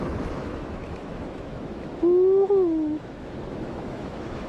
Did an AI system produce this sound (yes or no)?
yes